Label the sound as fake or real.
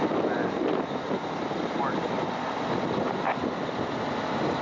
real